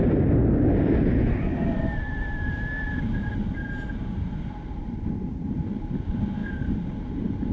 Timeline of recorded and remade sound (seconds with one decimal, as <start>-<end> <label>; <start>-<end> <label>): 0.0-7.5 recorded